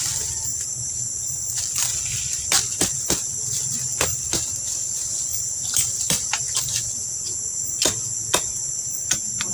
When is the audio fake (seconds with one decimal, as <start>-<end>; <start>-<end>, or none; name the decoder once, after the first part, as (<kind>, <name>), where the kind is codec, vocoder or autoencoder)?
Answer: 0.5-4.5 (vocoder, BigVGAN v2); 5.3-6.5